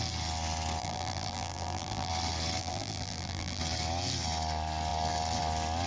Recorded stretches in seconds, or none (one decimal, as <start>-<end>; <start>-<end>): 0.0-0.8; 2.1-2.6; 3.6-5.9